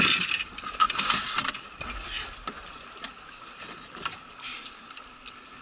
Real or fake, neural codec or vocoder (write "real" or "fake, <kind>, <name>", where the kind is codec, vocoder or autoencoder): real